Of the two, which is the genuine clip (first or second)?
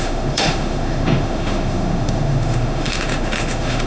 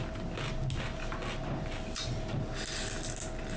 second